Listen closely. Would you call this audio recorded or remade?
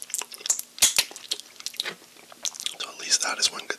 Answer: recorded